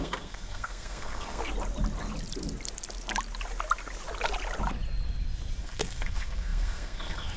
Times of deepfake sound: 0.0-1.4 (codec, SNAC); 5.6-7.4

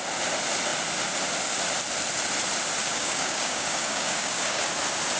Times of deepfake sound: 2.8-4.7 (codec, DAC)

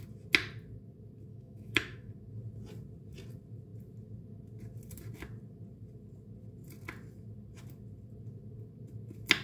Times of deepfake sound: 1.3-2.1 (autoencoder, DAC-VAE)

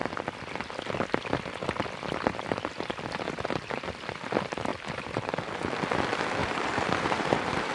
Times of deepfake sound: 4.7-5.3 (vocoder, BigVGAN v2); 6.4-7.7

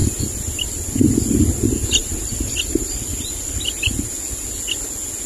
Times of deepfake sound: 0.0-1.4 (vocoder, BigVGAN v2); 2.0-4.1

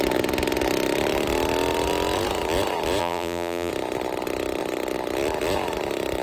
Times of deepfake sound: 3.0-3.7 (vocoder, BigVGAN v2)

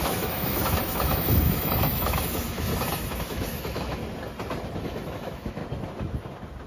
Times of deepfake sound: 0.0-2.7 (autoencoder, DAC-VAE); 3.2-4.0; 4.8-5.6

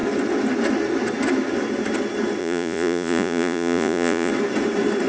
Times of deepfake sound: 2.4-4.3 (vocoder, Vocos)